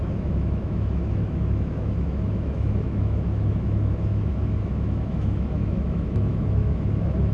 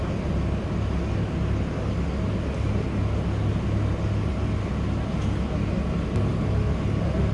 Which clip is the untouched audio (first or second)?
second